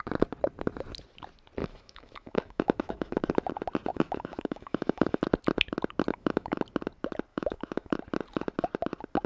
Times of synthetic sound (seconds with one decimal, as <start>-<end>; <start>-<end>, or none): 1.6-3.2; 3.9-5.2; 6.1-6.6; 7.3-8.0